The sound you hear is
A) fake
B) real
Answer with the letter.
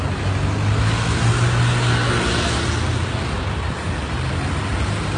B